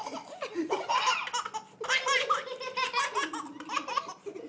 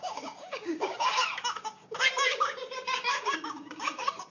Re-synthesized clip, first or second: second